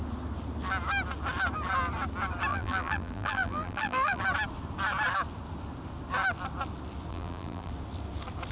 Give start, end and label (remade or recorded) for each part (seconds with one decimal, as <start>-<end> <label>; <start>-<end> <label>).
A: 0.0-2.5 recorded; 2.5-4.2 remade; 4.2-7.1 recorded; 7.1-7.7 remade; 7.7-8.5 recorded